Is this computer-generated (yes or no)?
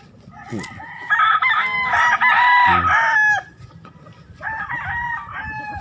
no